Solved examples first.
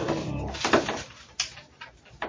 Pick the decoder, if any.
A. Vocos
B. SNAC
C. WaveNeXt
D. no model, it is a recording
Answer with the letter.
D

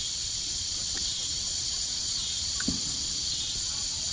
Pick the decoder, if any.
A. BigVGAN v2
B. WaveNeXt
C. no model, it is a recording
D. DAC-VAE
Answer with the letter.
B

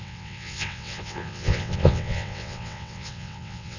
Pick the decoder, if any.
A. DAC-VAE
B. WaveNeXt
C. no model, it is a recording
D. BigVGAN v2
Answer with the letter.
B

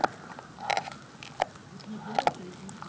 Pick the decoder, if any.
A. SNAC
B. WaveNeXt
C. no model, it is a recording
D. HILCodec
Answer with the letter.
C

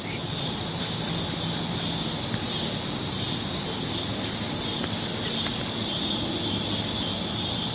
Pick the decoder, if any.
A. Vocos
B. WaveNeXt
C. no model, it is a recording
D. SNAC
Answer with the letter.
C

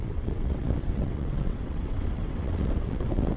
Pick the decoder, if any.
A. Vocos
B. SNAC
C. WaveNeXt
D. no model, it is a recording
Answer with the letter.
C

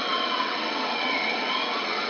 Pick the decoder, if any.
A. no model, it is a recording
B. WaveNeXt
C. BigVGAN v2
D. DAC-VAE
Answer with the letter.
B